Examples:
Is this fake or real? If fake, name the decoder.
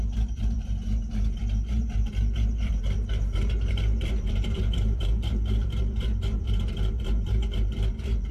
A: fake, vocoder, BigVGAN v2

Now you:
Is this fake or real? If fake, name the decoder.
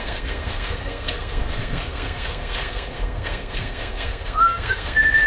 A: fake, codec, SNAC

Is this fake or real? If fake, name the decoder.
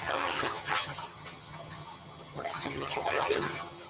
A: fake, vocoder, HiFi-GAN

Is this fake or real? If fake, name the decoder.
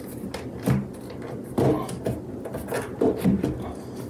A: real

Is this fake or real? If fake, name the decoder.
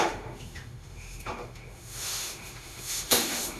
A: fake, autoencoder, DAC-VAE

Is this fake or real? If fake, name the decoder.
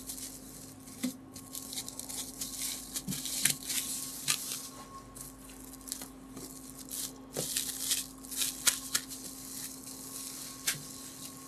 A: real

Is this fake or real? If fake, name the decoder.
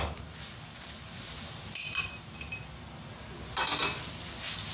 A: real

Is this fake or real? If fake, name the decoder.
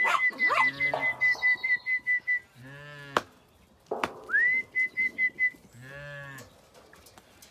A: real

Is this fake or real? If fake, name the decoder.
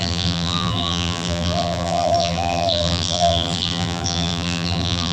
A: fake, vocoder, BigVGAN v2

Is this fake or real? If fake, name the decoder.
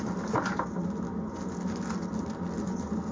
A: real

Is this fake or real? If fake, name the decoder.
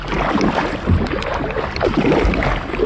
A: real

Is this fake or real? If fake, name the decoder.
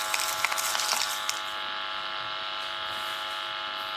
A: real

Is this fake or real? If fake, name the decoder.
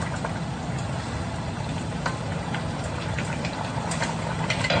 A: fake, vocoder, BigVGAN v2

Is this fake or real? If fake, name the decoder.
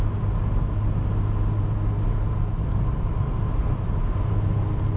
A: real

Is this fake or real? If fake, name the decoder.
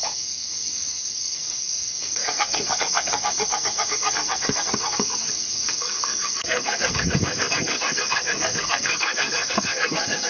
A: fake, codec, SNAC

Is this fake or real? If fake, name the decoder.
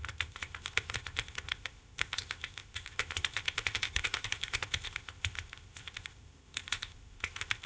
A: fake, codec, ZipCodec